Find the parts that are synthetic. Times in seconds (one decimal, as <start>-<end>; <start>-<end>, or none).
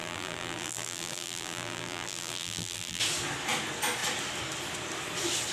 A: 0.0-3.0